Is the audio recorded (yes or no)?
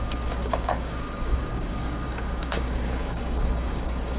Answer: no